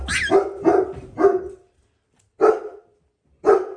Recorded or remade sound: recorded